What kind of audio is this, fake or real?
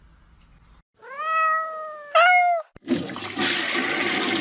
real